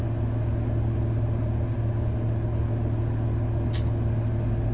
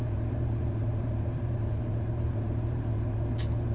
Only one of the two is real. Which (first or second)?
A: first